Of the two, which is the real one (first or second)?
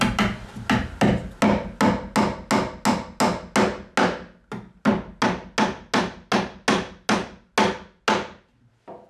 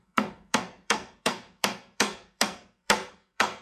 first